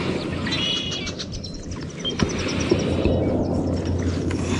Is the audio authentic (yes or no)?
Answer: yes